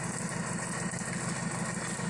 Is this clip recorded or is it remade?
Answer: recorded